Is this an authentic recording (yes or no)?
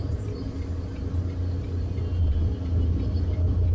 yes